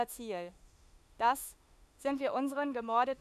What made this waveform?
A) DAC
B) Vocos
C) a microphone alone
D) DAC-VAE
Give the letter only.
D